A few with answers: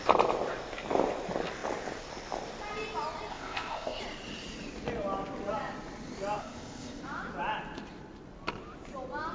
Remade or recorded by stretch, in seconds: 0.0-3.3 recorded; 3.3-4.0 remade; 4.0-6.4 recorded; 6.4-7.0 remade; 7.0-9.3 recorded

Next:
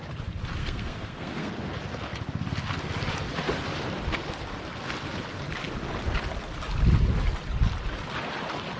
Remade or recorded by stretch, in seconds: 0.0-0.6 recorded; 0.6-1.5 remade; 1.5-8.8 recorded

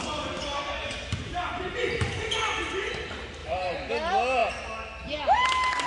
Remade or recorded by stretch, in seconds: 0.0-0.8 recorded; 0.8-2.7 remade; 2.7-3.4 recorded; 3.4-3.9 remade; 3.9-5.9 recorded